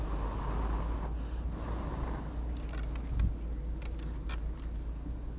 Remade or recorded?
recorded